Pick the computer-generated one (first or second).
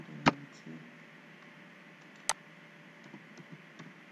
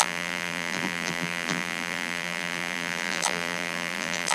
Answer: second